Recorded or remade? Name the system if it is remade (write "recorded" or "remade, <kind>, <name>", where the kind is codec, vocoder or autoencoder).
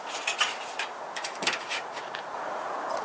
remade, vocoder, Vocos